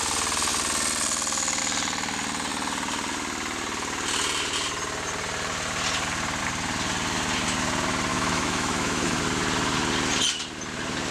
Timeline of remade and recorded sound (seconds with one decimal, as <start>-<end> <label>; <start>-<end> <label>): 0.0-8.1 recorded; 8.1-9.2 remade; 9.2-11.1 recorded